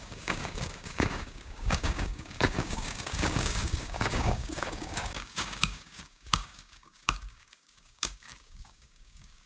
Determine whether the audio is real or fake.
fake